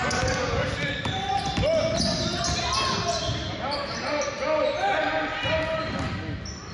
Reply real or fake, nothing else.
real